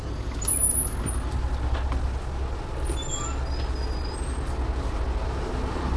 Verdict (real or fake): real